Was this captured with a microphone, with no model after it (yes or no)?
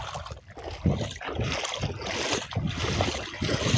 yes